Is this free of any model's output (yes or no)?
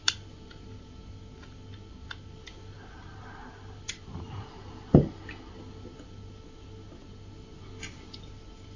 yes